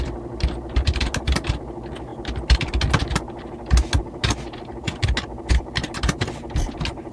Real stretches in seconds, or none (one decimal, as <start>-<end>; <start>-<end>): 0.0-7.1